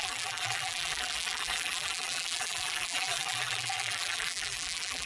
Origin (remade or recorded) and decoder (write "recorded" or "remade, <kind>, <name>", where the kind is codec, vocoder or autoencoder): remade, vocoder, BigVGAN v2